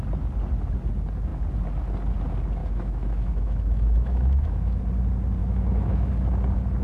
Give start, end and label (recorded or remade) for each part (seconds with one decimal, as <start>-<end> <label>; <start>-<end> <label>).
0.0-2.6 recorded; 2.6-4.8 remade; 4.8-5.4 recorded; 5.4-6.1 remade; 6.1-6.8 recorded